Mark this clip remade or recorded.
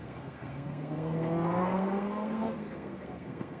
remade